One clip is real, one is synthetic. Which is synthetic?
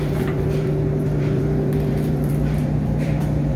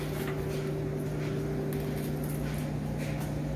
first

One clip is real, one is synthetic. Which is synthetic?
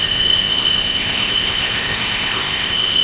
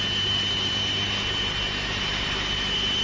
first